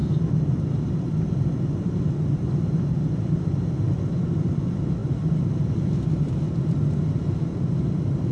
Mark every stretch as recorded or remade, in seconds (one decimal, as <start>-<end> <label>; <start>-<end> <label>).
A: 0.0-1.2 recorded; 1.2-8.3 remade